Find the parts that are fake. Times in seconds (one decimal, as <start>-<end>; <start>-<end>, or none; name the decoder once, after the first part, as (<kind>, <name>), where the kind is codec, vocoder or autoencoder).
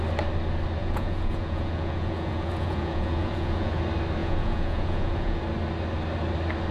0.8-3.8 (vocoder, Vocos); 4.2-5.4